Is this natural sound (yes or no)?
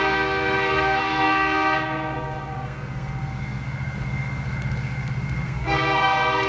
no